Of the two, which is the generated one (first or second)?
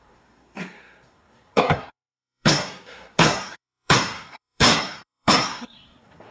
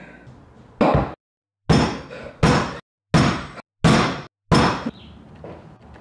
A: first